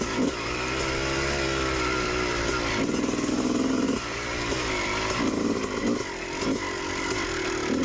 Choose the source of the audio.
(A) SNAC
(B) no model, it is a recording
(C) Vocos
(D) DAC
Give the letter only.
B